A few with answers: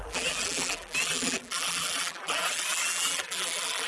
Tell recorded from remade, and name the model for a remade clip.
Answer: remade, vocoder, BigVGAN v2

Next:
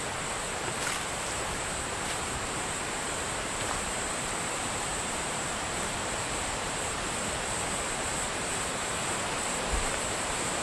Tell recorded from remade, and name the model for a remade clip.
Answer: remade, vocoder, BigVGAN v2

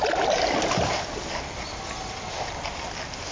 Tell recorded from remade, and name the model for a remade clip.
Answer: recorded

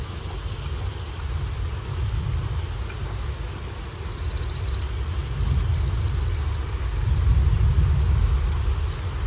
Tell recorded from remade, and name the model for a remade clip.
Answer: recorded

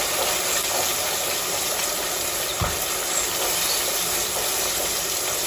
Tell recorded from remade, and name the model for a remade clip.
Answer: recorded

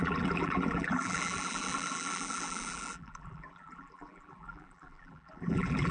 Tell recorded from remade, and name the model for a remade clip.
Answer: remade, vocoder, BigVGAN v2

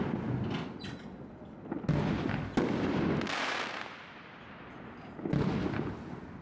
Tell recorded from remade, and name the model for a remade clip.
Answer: recorded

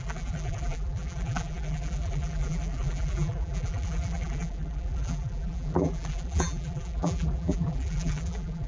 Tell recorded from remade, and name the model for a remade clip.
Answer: remade, vocoder, BigVGAN v2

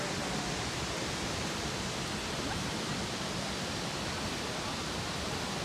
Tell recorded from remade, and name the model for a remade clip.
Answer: recorded